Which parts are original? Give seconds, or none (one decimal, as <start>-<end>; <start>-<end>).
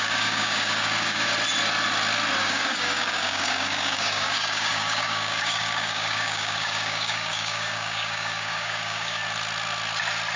1.3-2.4; 9.2-10.4